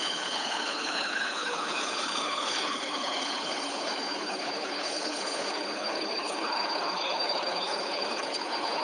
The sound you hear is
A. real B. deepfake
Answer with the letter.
B